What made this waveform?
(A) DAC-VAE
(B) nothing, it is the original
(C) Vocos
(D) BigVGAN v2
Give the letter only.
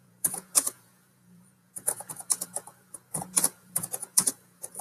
C